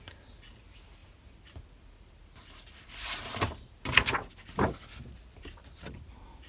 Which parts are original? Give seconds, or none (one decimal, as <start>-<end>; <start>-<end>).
0.0-6.5